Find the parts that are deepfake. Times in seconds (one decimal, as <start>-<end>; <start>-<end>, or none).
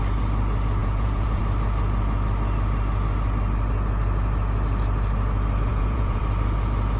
0.8-1.4; 5.7-6.2